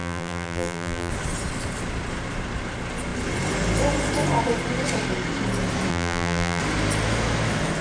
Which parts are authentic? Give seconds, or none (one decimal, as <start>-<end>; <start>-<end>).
1.1-5.9; 6.6-7.8